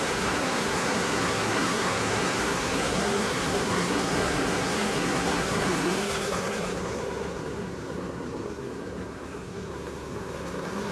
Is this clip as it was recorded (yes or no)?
no